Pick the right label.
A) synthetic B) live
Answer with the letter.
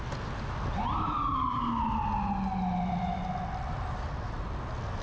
B